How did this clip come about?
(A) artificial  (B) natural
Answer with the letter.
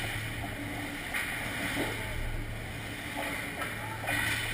B